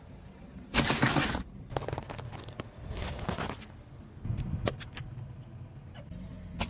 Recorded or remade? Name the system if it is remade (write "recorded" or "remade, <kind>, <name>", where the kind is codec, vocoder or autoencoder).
recorded